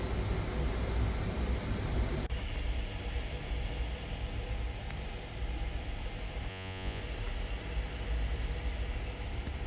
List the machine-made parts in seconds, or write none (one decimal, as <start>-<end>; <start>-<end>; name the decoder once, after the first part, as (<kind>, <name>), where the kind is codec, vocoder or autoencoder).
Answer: 6.5-7.0 (vocoder, Vocos)